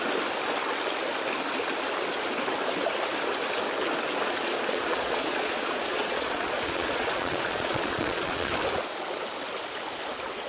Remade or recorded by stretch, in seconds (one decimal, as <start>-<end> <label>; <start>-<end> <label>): 0.0-4.4 recorded; 4.4-8.5 remade; 8.5-10.5 recorded